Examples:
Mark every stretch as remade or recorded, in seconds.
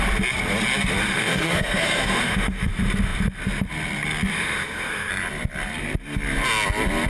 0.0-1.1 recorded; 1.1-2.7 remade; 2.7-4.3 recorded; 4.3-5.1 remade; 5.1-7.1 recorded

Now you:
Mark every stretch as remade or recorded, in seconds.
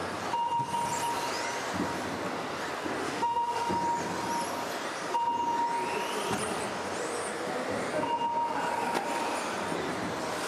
0.0-3.0 recorded; 3.0-3.7 remade; 3.7-10.5 recorded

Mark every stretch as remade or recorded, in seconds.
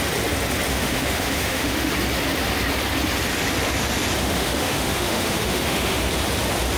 0.0-0.7 recorded; 0.7-1.9 remade; 1.9-4.2 recorded; 4.2-6.0 remade; 6.0-6.8 recorded